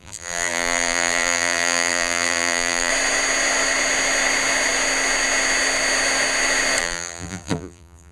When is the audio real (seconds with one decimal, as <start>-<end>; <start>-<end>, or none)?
2.9-6.8